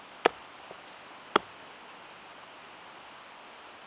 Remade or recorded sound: recorded